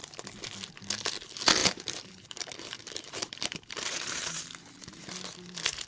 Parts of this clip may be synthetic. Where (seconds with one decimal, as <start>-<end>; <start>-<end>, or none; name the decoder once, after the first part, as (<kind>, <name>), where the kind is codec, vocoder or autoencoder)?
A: 1.6-5.1 (vocoder, BigVGAN v2)